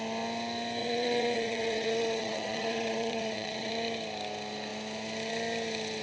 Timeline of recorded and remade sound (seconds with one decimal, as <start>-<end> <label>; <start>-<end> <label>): 0.0-0.8 recorded; 0.8-3.7 remade; 3.7-6.0 recorded